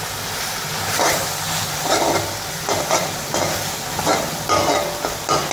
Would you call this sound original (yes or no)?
yes